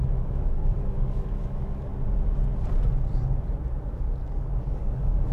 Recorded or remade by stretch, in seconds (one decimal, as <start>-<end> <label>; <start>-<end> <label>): 0.0-1.9 remade; 1.9-4.3 recorded; 4.3-5.3 remade